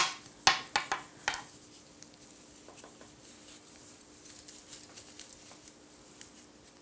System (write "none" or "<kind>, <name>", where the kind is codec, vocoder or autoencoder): none